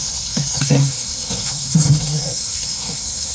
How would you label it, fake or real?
fake